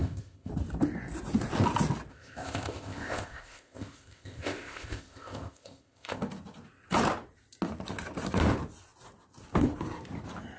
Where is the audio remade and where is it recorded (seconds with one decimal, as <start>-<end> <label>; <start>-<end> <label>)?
0.0-0.5 remade; 0.5-2.1 recorded; 2.1-6.2 remade; 6.2-10.6 recorded